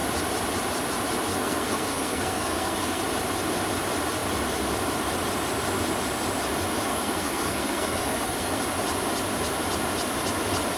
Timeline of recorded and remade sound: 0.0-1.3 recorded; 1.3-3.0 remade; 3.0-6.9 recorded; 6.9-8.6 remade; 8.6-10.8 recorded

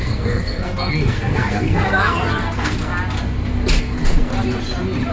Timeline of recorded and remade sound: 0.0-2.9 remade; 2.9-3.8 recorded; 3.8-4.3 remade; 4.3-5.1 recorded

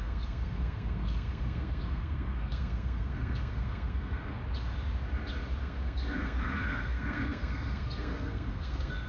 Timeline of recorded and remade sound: 0.0-4.4 remade; 4.4-5.6 recorded; 5.6-9.1 remade

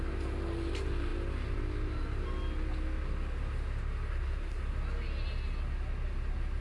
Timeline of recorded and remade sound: 0.0-4.1 recorded; 4.1-4.6 remade; 4.6-6.6 recorded